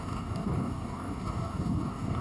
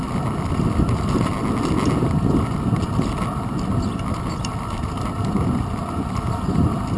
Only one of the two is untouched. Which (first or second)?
second